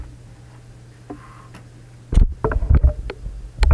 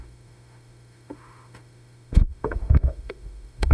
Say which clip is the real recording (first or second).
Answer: first